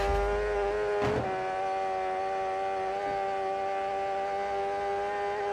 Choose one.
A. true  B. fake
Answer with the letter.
A